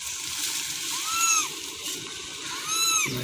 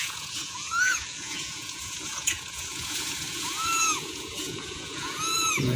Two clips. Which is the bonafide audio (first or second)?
first